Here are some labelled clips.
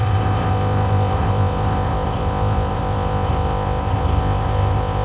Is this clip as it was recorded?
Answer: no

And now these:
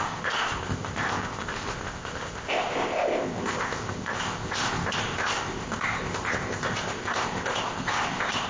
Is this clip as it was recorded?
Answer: no